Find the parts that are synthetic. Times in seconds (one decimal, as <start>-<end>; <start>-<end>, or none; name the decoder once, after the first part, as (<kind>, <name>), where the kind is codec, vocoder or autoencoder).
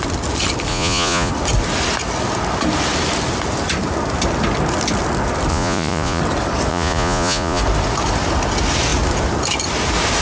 0.7-1.3 (vocoder, Vocos); 5.5-6.2; 6.7-7.6